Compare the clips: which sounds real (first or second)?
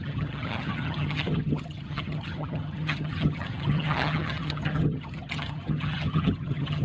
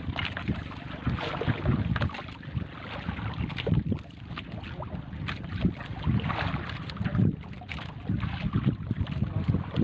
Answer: second